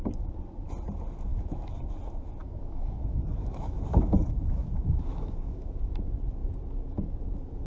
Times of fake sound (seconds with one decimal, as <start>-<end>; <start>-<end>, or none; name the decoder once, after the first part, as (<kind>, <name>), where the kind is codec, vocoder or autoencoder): 1.3-1.8 (autoencoder, DAC-VAE); 2.4-5.7